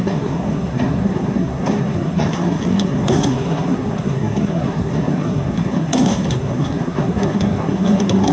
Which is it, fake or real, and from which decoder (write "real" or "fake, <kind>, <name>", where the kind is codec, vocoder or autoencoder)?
fake, codec, SNAC